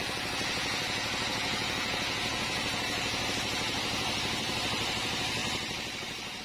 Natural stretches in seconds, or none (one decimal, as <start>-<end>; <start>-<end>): 0.0-0.6; 3.2-6.4